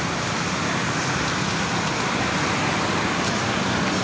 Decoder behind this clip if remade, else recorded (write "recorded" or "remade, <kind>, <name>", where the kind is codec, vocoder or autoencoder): recorded